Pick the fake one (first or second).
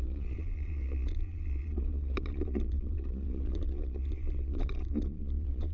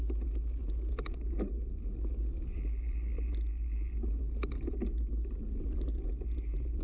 first